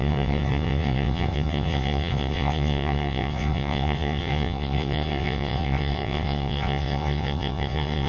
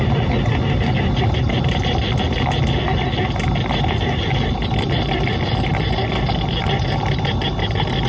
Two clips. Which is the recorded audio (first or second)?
second